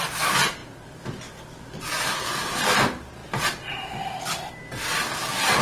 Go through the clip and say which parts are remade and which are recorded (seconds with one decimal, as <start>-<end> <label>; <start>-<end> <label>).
0.0-0.6 recorded; 0.6-1.8 remade; 1.8-3.2 recorded; 3.2-4.5 remade; 4.5-5.6 recorded